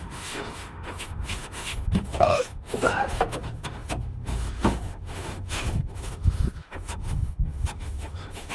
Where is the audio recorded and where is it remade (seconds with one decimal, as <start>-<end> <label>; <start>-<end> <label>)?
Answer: 0.0-8.5 remade